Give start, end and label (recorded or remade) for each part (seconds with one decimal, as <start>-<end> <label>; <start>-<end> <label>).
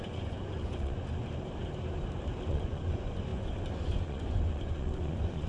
0.0-1.1 remade; 1.1-2.5 recorded; 2.5-5.5 remade